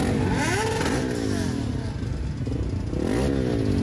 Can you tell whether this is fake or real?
real